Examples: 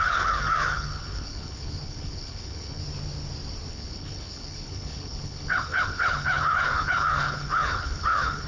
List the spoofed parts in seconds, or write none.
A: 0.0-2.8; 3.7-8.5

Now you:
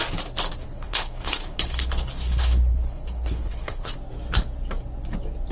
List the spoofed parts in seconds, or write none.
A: 0.6-3.9

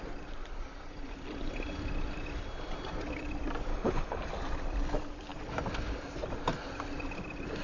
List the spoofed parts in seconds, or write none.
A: 3.7-4.3

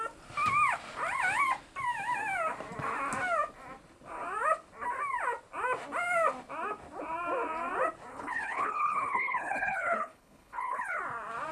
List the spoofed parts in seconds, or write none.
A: 8.1-11.0

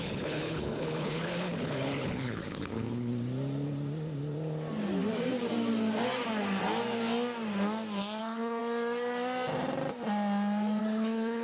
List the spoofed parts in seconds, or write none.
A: 0.0-3.1; 8.2-8.6; 10.8-11.4